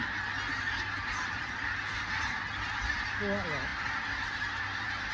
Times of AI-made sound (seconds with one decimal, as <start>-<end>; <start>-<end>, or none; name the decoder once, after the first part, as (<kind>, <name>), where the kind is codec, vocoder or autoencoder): 1.0-1.8 (vocoder, BigVGAN v2); 3.7-5.1